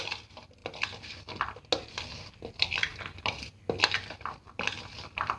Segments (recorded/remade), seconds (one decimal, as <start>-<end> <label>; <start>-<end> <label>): 0.0-5.4 recorded